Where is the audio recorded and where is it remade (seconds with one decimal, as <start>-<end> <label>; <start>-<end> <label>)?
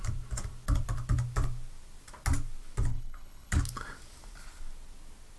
0.0-2.9 recorded; 2.9-3.5 remade; 3.5-5.4 recorded